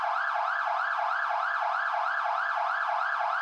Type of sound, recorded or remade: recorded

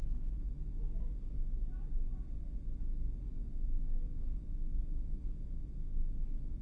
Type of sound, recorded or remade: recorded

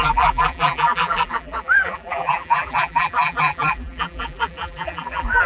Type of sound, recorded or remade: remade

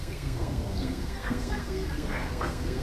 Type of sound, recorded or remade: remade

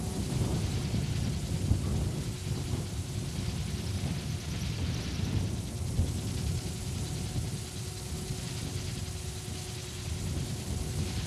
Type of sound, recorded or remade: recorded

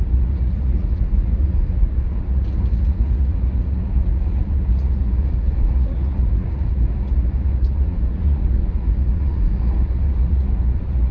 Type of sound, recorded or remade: remade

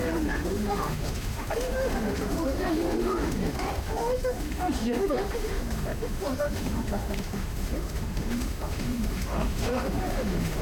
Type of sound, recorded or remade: remade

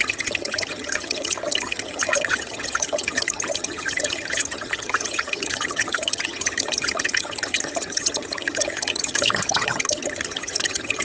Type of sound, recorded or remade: remade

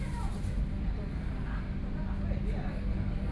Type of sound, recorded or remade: recorded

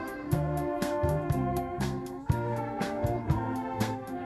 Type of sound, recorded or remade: remade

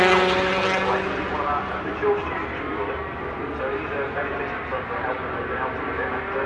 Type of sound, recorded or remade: recorded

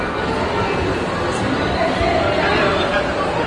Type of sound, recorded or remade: recorded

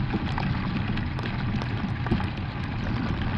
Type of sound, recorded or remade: recorded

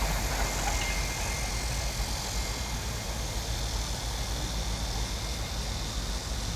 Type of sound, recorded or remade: recorded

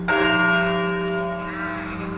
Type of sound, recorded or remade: recorded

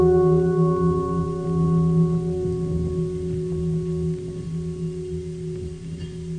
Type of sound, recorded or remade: recorded